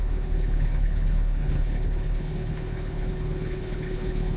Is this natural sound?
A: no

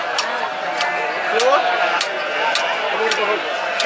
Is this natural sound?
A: yes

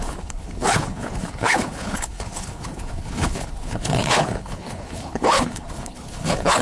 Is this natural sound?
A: no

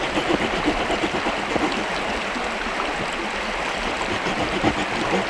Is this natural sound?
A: yes